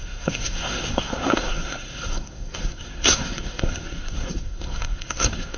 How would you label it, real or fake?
fake